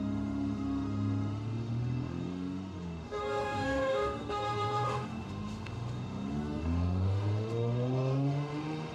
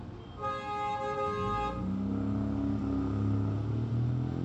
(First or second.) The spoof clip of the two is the first